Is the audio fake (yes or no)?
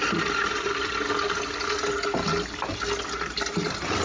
no